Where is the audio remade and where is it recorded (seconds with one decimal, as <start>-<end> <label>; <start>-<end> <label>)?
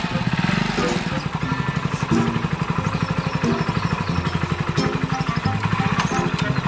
0.0-6.7 recorded